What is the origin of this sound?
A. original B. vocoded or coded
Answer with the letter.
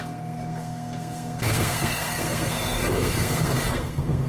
B